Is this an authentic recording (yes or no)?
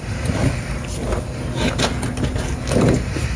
yes